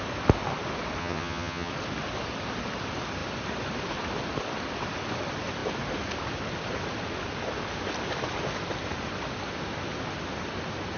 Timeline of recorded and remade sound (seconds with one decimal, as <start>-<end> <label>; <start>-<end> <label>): 0.0-1.0 recorded; 1.0-1.7 remade; 1.7-11.0 recorded